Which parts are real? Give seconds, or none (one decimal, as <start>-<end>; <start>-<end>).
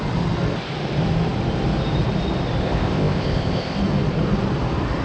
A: 0.0-2.6; 3.8-5.0